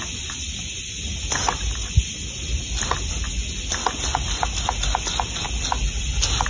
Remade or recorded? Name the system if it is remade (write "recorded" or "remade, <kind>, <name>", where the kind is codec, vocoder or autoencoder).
recorded